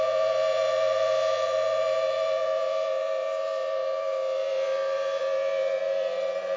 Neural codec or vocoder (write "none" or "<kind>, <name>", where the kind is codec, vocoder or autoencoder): vocoder, Vocos